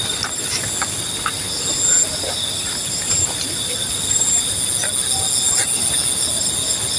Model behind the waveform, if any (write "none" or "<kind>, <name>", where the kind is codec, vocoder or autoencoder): none